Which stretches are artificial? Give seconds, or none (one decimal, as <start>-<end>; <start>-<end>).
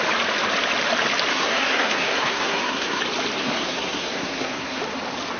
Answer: 1.3-3.0; 3.4-4.8